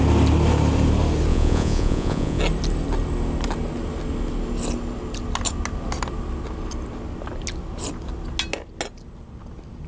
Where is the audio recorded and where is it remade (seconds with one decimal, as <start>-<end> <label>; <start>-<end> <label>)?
0.0-1.3 recorded; 1.3-2.4 remade; 2.4-9.9 recorded